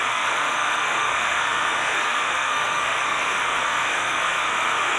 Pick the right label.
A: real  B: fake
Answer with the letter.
B